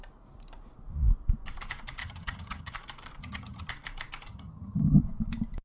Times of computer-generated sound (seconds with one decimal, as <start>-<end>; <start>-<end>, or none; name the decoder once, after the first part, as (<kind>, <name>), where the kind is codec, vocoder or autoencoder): 2.0-2.7 (vocoder, HiFi-GAN); 3.2-3.7; 4.3-5.0